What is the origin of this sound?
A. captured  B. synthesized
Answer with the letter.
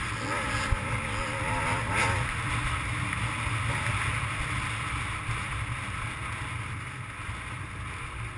A